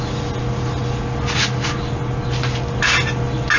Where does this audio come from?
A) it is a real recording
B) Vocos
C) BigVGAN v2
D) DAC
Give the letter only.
A